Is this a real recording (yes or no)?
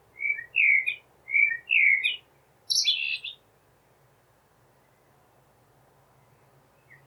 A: yes